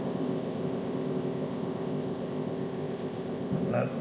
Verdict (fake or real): fake